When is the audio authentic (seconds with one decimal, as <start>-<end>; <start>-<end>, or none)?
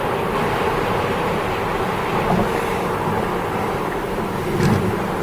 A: 0.0-0.7; 1.7-4.8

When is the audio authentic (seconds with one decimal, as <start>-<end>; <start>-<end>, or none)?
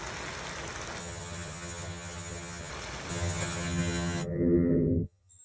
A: 0.0-1.0; 2.7-3.1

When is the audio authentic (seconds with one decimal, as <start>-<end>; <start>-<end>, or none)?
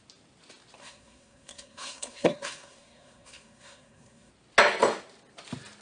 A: 0.0-0.8; 4.3-5.8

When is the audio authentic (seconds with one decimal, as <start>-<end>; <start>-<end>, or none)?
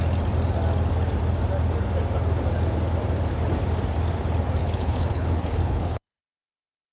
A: 0.0-4.6; 6.2-6.9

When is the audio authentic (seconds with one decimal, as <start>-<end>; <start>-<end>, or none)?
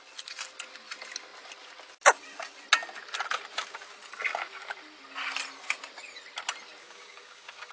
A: 0.0-6.8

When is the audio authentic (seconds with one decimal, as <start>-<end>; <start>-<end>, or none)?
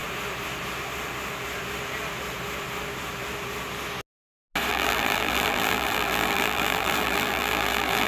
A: 0.0-4.7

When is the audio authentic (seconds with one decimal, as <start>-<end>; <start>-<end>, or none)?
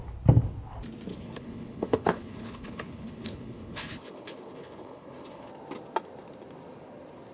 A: 0.0-1.1; 5.5-7.3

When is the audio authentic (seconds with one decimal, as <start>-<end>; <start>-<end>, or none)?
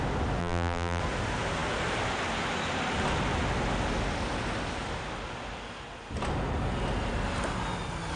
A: 0.0-0.4; 1.0-8.2